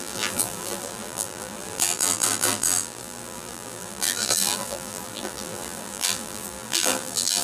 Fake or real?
fake